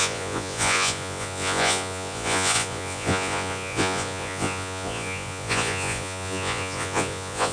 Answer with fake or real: fake